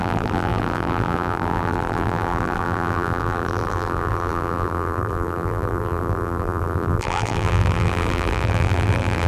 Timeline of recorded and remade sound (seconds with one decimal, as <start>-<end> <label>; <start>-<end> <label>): 0.0-9.3 remade